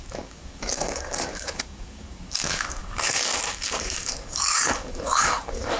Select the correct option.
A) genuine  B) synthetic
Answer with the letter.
B